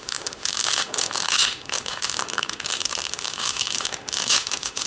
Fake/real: fake